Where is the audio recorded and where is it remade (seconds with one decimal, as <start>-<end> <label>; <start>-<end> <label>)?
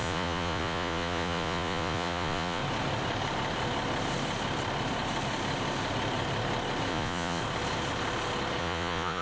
0.0-2.6 remade; 2.6-6.9 recorded; 6.9-7.4 remade; 7.4-8.6 recorded; 8.6-9.2 remade